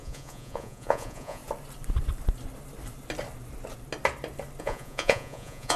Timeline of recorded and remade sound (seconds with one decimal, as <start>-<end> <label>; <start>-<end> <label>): 0.0-1.4 remade; 1.4-4.6 recorded; 4.6-5.8 remade